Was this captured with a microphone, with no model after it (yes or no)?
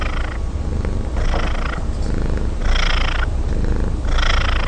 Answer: yes